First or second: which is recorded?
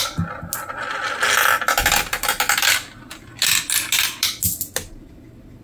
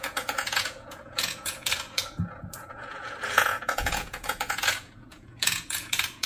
first